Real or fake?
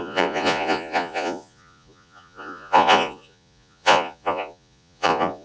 fake